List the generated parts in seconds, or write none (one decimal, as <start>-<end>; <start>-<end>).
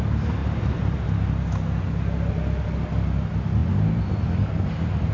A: none